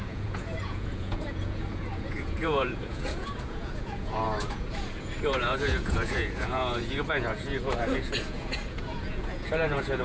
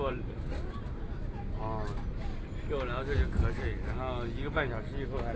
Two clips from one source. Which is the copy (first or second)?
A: first